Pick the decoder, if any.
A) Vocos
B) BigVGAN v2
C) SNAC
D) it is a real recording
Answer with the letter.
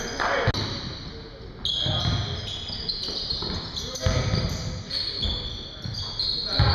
D